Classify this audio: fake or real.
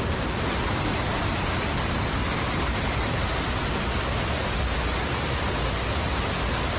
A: real